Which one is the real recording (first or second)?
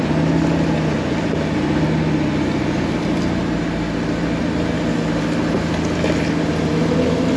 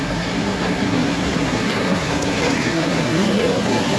first